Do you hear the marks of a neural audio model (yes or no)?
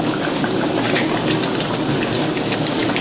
no